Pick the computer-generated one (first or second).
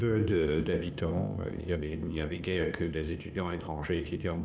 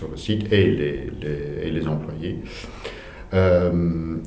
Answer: first